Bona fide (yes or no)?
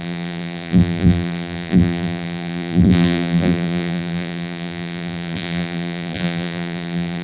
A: no